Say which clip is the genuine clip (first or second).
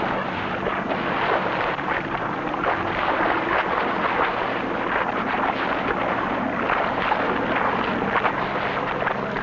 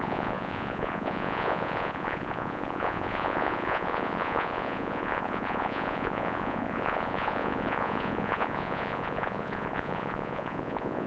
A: first